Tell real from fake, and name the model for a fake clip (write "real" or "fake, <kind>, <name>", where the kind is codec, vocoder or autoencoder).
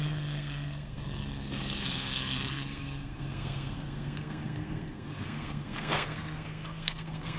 fake, codec, SNAC